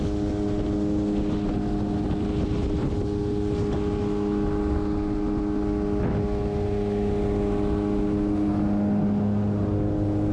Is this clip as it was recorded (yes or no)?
yes